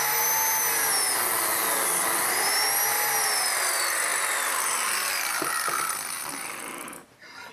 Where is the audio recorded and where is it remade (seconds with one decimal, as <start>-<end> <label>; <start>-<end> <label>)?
0.0-7.5 recorded